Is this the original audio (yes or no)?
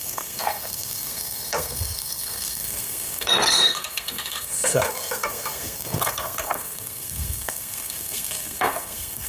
no